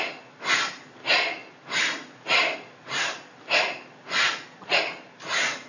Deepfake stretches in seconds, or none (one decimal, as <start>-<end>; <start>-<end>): none